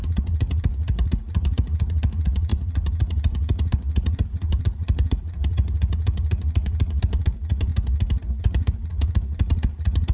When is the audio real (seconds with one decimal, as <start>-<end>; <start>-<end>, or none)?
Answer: 7.7-8.4